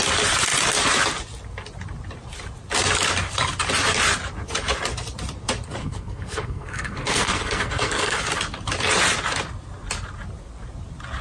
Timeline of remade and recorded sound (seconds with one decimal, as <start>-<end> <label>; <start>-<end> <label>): 0.0-5.8 recorded; 5.8-8.2 remade; 8.2-11.2 recorded